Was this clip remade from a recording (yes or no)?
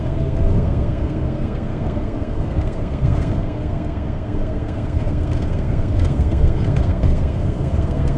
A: yes